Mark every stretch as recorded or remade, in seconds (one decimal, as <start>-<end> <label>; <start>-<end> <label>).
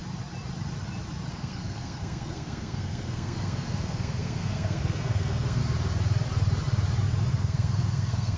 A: 0.0-1.3 recorded; 1.3-5.6 remade; 5.6-7.3 recorded; 7.3-8.4 remade